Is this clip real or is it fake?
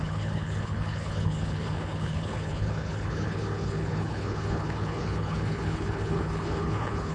fake